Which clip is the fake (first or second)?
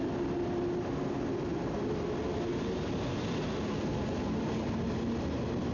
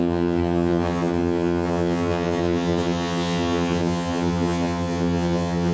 second